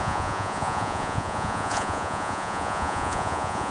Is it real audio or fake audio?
fake